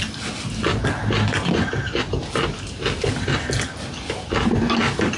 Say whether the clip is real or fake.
real